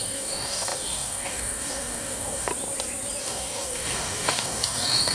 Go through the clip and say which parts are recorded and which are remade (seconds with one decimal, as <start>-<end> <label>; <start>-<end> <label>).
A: 0.0-2.5 remade; 2.5-3.2 recorded; 3.2-5.1 remade